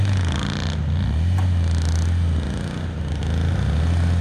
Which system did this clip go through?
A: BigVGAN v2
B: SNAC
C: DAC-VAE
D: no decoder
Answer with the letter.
D